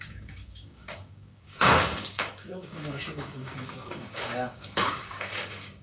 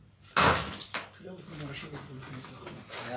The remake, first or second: first